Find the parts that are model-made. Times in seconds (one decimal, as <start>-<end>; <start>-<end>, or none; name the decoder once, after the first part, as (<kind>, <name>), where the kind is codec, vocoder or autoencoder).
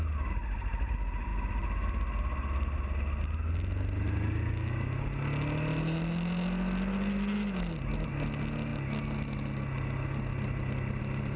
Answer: none